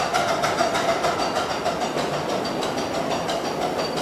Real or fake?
real